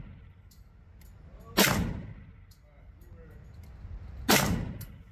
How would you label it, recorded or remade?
recorded